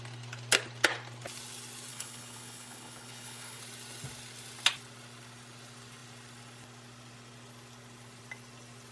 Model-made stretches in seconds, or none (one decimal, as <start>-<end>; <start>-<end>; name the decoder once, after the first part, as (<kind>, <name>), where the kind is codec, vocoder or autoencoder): 1.9-3.6 (codec, HILCodec)